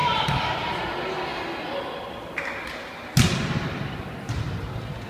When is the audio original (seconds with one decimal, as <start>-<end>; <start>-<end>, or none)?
0.8-5.1